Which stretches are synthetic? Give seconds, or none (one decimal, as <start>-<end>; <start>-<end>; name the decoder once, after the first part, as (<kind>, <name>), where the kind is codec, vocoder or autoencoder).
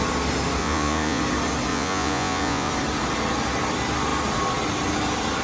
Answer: 0.6-1.2 (vocoder, Vocos); 1.7-2.7